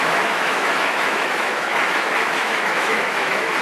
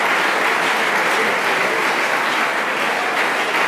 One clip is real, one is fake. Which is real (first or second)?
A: second